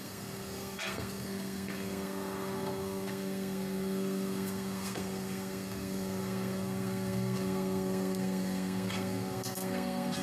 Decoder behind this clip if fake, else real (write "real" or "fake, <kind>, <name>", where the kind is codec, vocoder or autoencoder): fake, codec, SNAC